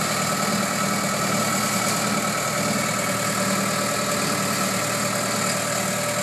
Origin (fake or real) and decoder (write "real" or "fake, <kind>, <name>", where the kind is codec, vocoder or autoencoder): real